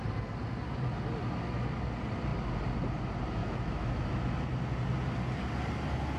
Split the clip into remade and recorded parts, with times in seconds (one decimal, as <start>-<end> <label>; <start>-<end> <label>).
0.0-3.4 recorded; 3.4-4.1 remade; 4.1-6.2 recorded